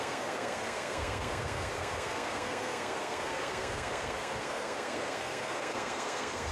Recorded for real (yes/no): no